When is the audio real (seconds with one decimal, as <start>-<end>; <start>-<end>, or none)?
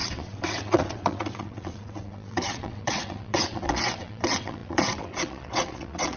none